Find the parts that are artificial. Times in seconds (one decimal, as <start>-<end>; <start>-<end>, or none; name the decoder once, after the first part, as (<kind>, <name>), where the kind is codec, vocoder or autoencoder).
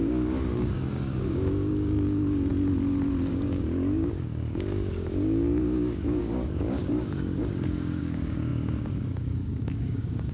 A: 0.0-2.5 (codec, DAC); 3.3-10.3